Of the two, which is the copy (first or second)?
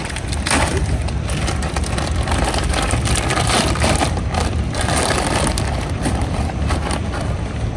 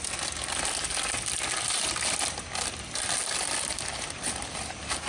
first